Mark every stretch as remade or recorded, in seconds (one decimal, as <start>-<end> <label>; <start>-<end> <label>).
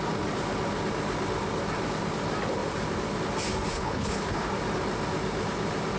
0.0-3.7 recorded; 3.7-4.5 remade; 4.5-6.0 recorded